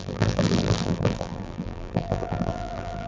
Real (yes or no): no